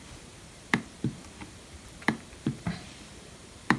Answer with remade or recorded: remade